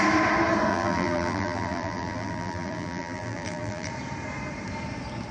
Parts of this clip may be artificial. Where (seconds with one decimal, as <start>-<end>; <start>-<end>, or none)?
0.7-3.9